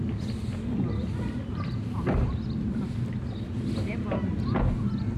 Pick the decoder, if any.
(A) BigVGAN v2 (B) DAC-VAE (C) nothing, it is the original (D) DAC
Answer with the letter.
C